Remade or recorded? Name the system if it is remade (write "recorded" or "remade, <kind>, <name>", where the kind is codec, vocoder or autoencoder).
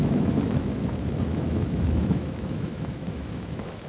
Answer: remade, autoencoder, DAC-VAE